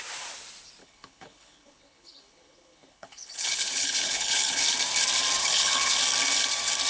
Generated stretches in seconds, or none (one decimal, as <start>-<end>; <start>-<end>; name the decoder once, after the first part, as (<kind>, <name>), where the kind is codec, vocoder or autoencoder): 0.8-4.6 (codec, HILCodec); 5.4-6.0